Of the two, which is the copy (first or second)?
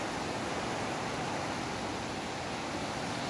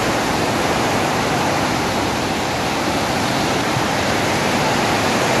second